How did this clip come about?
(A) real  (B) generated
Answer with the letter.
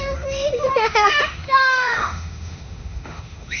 B